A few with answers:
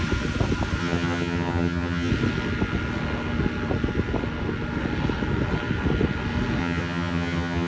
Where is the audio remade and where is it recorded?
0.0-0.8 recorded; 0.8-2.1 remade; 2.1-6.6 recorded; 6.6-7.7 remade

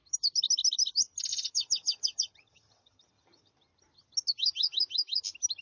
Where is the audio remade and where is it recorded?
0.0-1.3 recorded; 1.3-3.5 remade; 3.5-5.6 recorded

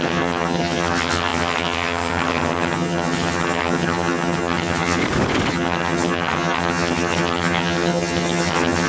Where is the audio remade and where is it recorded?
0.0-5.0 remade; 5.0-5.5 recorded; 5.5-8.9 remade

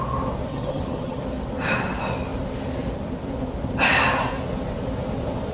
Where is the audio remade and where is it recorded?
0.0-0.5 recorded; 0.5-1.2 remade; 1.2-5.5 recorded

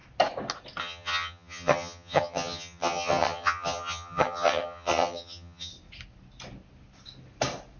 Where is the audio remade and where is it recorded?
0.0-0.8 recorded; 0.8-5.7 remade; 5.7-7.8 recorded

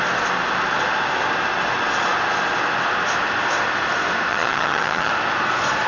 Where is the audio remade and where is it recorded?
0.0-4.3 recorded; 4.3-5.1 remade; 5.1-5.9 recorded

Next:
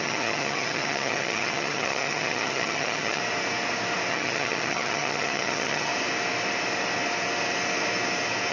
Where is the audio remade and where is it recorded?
0.0-3.2 remade; 3.2-4.1 recorded; 4.1-5.9 remade; 5.9-8.5 recorded

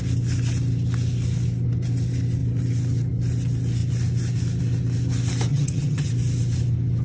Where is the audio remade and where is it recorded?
0.0-5.5 recorded; 5.5-6.1 remade; 6.1-7.0 recorded